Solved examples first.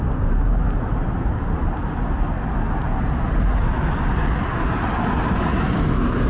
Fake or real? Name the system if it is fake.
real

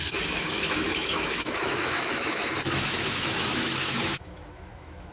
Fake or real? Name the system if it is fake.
fake, autoencoder, DAC-VAE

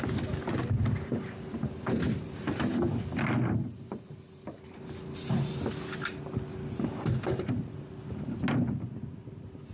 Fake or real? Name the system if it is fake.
real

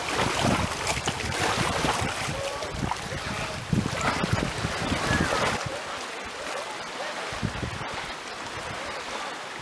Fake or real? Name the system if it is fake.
real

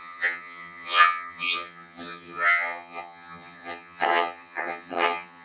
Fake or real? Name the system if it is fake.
fake, vocoder, HiFi-GAN